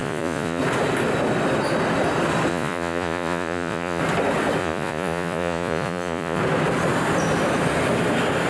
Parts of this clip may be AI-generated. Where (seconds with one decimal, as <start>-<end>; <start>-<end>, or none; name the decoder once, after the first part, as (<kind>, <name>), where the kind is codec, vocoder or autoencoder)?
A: 0.0-0.6 (vocoder, Vocos); 2.5-4.0; 4.6-6.4